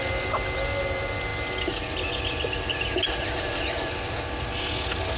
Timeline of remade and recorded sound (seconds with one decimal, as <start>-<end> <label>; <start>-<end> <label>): 0.0-5.2 recorded